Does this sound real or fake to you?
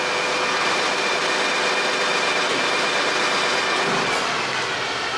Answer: real